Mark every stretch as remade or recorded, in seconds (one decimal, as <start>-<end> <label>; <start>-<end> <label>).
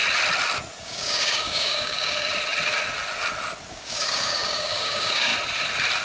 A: 0.0-0.8 recorded; 0.8-2.3 remade; 2.3-3.7 recorded; 3.7-5.3 remade; 5.3-6.0 recorded